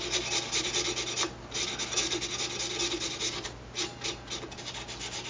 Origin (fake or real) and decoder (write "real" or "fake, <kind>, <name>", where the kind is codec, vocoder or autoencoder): real